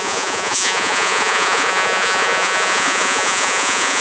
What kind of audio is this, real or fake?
fake